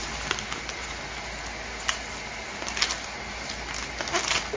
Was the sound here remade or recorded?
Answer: recorded